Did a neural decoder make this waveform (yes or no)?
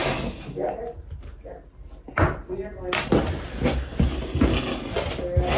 no